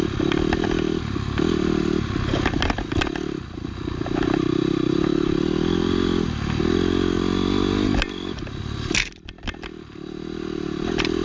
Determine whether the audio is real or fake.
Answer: real